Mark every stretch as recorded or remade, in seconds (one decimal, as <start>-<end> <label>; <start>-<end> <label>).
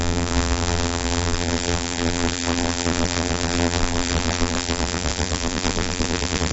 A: 0.0-6.5 remade